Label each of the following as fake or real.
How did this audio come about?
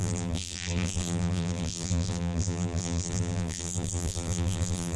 fake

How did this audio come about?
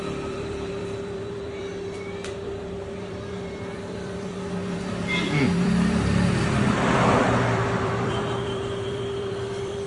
fake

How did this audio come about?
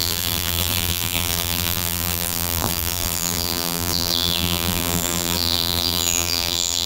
fake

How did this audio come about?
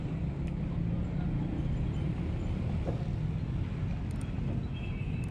real